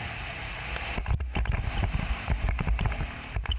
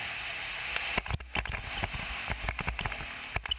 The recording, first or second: second